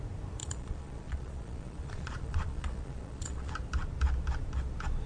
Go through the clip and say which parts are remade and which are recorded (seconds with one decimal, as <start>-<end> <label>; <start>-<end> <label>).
0.0-0.4 recorded; 0.4-3.5 remade; 3.5-5.1 recorded